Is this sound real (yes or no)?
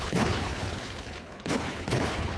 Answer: no